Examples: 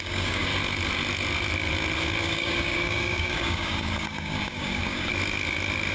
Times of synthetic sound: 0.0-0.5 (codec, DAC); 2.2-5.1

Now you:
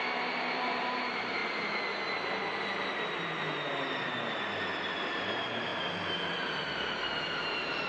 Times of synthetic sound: 0.0-1.4 (vocoder, BigVGAN v2); 5.2-5.7; 6.7-7.9

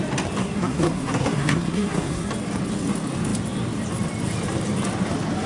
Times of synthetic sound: 0.4-2.3 (codec, SNAC)

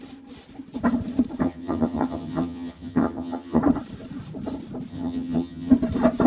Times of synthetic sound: 1.4-3.6 (vocoder, HiFi-GAN); 4.9-5.7

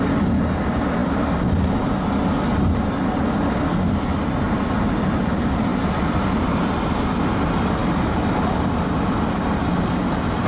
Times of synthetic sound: 5.7-7.1 (vocoder, BigVGAN v2)

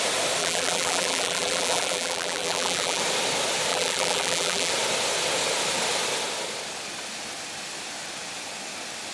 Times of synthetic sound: 0.4-3.0 (vocoder, BigVGAN v2); 3.7-4.7

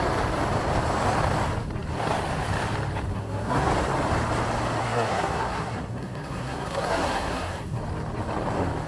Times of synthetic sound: 3.1-3.7 (codec, SNAC); 4.8-7.8

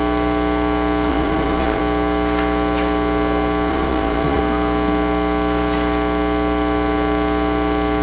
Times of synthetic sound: 1.1-1.8 (vocoder, Vocos); 3.7-4.4